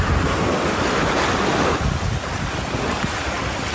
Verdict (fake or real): real